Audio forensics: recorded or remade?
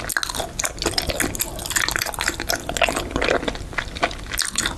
recorded